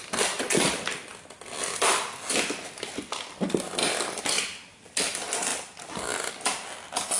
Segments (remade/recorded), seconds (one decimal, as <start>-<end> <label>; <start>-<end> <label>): 0.0-7.2 recorded